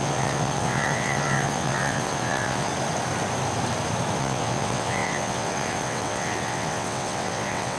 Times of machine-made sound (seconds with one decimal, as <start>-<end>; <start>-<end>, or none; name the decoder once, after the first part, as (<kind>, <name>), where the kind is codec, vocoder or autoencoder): 0.0-2.7 (vocoder, WaveNeXt); 4.2-7.8